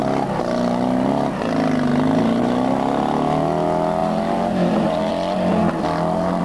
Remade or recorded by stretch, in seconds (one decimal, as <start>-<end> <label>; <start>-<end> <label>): 0.0-4.0 recorded; 4.0-5.1 remade; 5.1-6.4 recorded